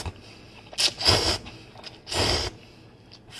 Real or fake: real